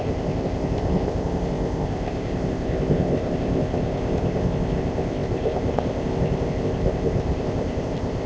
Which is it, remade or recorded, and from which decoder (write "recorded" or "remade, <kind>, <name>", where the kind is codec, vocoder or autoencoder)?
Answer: remade, codec, ZipCodec